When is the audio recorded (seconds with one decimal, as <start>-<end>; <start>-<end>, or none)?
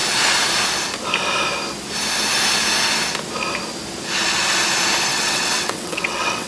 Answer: 0.0-5.1